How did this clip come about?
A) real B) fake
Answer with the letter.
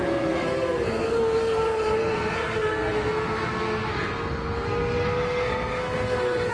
B